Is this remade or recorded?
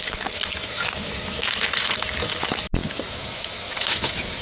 remade